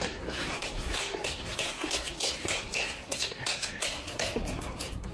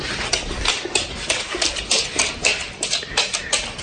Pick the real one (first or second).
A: second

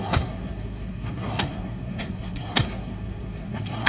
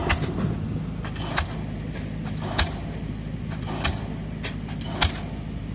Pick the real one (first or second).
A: second